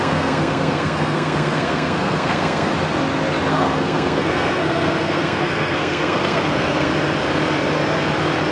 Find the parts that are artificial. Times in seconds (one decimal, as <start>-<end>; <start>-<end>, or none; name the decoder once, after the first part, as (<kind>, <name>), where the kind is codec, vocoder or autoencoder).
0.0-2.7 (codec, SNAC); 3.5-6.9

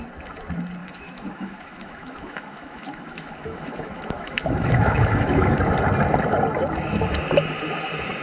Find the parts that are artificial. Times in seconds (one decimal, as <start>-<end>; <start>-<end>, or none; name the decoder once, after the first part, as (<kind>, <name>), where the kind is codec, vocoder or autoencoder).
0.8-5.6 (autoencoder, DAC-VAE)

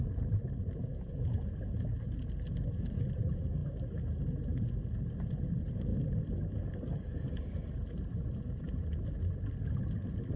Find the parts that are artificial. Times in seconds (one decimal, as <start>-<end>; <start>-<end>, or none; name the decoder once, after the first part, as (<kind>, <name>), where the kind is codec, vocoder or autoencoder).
none

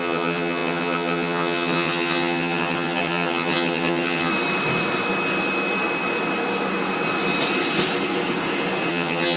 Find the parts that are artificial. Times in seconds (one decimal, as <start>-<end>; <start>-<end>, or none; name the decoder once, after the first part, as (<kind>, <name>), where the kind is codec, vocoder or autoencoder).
0.0-4.3 (vocoder, HiFi-GAN); 8.9-9.4

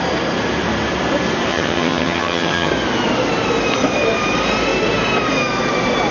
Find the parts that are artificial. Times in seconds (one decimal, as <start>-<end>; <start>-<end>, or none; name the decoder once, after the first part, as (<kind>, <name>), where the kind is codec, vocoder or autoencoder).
1.5-2.7 (vocoder, HiFi-GAN)

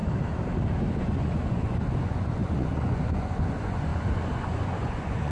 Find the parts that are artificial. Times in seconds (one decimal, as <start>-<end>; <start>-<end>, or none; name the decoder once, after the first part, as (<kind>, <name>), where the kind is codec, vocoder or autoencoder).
0.9-5.3 (vocoder, Vocos)